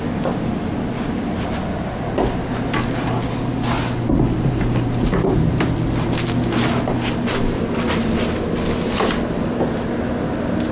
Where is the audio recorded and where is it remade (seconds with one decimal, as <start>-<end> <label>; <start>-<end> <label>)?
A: 0.0-10.7 recorded